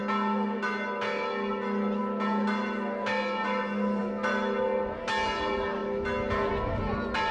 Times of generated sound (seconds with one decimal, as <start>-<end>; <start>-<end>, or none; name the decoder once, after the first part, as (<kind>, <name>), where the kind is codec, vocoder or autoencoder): none